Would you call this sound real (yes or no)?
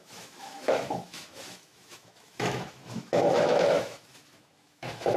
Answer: no